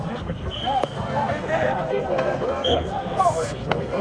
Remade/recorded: remade